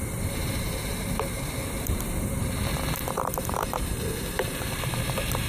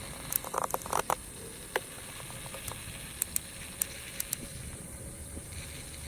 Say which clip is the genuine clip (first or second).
second